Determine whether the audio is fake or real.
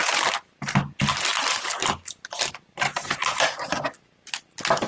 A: real